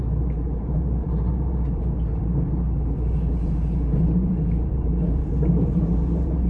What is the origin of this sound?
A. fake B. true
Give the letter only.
A